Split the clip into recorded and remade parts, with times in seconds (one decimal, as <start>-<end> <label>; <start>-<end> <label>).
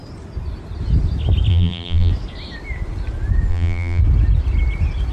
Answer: 0.0-1.5 recorded; 1.5-2.1 remade; 2.1-3.5 recorded; 3.5-4.0 remade; 4.0-5.1 recorded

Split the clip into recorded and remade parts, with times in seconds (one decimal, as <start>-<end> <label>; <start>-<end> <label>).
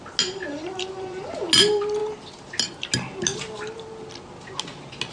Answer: 0.0-0.4 recorded; 0.4-1.2 remade; 1.2-5.1 recorded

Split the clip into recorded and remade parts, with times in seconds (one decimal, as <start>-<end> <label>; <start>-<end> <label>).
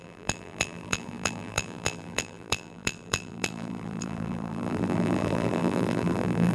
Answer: 0.0-6.5 remade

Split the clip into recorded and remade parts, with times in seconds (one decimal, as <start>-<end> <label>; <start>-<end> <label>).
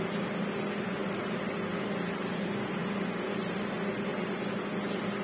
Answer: 0.0-1.0 recorded; 1.0-1.5 remade; 1.5-5.2 recorded